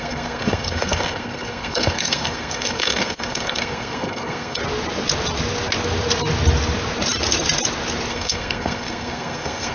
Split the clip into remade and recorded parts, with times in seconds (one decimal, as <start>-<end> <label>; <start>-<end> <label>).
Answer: 0.0-4.6 remade; 4.6-8.1 recorded; 8.1-9.7 remade